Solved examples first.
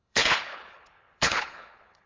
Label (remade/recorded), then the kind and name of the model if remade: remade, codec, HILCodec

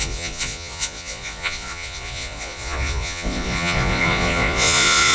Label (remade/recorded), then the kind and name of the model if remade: remade, vocoder, Vocos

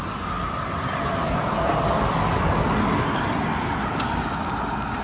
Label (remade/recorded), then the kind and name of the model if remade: recorded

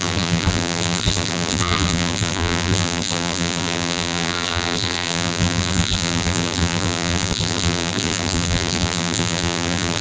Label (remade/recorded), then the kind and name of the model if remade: remade, vocoder, BigVGAN v2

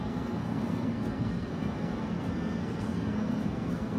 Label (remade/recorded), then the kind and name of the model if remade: remade, codec, SNAC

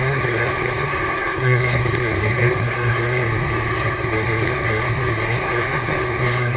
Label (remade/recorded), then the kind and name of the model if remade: remade, codec, SNAC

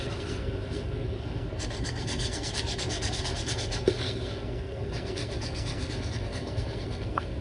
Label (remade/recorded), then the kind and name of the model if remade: remade, codec, SNAC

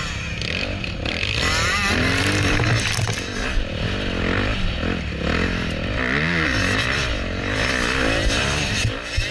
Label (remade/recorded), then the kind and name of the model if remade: remade, vocoder, BigVGAN v2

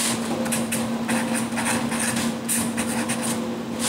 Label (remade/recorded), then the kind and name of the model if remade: recorded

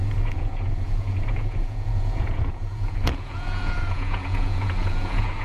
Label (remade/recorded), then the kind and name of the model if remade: remade, vocoder, Vocos